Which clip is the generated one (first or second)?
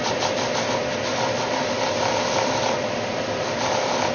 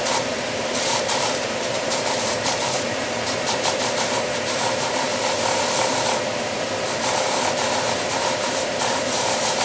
second